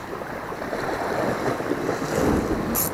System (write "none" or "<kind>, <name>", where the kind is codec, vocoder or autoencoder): none